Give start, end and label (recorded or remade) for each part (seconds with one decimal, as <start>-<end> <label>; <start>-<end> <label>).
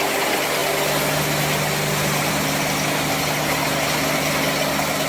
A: 0.0-5.1 recorded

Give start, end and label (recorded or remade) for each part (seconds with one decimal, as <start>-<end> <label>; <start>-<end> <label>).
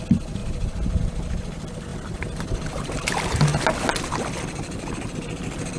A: 0.0-5.8 recorded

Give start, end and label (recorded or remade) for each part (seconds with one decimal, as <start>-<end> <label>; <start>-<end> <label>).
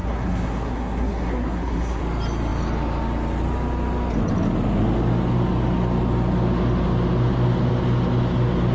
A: 0.0-2.0 remade; 2.0-8.7 recorded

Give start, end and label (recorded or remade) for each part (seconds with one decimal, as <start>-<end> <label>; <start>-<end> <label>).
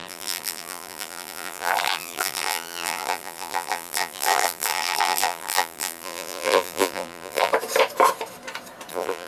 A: 0.0-7.5 remade; 7.5-8.9 recorded; 8.9-9.3 remade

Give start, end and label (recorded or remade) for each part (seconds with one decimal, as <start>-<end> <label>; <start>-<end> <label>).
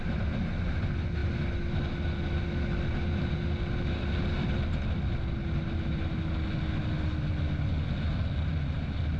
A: 0.0-9.2 recorded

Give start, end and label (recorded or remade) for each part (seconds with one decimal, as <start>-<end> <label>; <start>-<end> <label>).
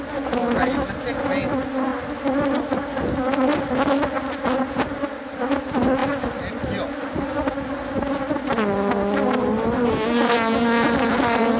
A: 0.0-0.4 recorded; 0.4-0.9 remade; 0.9-11.6 recorded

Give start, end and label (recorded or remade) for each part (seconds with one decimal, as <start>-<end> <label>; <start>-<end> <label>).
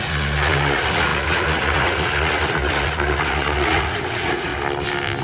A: 0.0-4.5 remade; 4.5-5.2 recorded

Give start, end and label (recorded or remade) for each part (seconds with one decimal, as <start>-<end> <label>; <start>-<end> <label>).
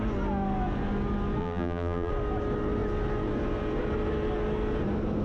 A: 0.0-1.4 recorded; 1.4-2.1 remade; 2.1-5.2 recorded